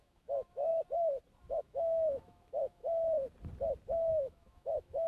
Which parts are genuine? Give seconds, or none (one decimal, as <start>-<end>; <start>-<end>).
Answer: 0.7-1.6; 2.8-4.1